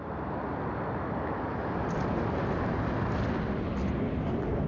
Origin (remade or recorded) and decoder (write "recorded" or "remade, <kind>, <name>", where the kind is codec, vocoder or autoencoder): recorded